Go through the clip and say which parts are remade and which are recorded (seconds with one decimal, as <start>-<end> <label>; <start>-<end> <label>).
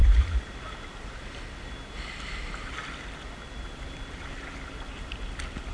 0.0-1.4 remade; 1.4-5.7 recorded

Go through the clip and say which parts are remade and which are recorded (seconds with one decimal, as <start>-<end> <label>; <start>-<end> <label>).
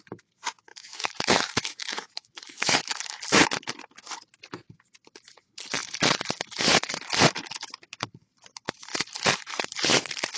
0.0-0.7 recorded; 0.7-3.2 remade; 3.2-10.4 recorded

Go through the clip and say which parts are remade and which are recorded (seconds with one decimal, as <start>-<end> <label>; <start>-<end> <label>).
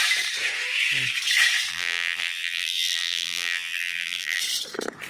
0.0-1.7 recorded; 1.7-4.4 remade; 4.4-5.1 recorded